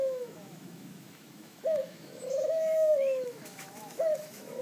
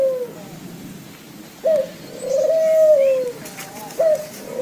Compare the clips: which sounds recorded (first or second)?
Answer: second